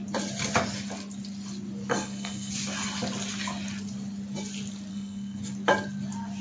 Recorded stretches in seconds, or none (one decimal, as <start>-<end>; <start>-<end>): 0.0-1.9; 2.5-4.9; 5.4-6.4